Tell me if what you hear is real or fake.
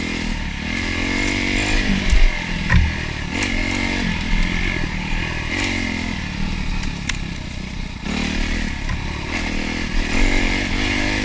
real